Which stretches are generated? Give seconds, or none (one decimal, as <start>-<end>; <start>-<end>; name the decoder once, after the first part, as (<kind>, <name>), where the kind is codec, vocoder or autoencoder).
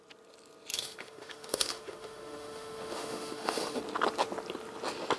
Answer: 0.7-3.8 (autoencoder, DAC-VAE)